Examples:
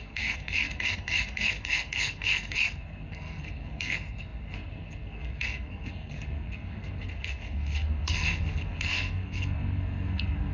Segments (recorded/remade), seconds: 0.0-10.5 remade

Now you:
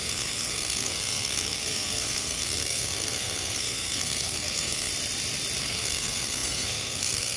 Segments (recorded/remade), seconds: 0.0-4.9 remade; 4.9-5.6 recorded; 5.6-7.4 remade

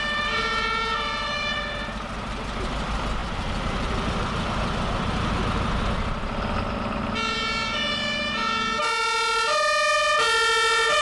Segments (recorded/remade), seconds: 0.0-11.0 recorded